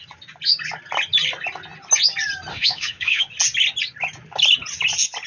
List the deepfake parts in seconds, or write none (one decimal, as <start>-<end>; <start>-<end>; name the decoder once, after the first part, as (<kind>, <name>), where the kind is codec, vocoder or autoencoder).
2.5-3.3 (autoencoder, DAC-VAE)